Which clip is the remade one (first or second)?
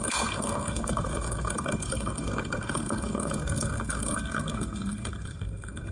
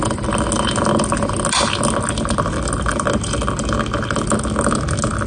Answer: first